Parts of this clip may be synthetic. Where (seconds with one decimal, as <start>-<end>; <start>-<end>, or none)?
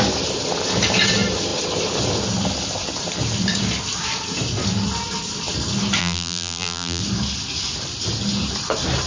6.0-7.0